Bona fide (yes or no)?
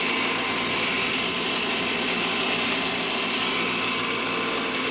yes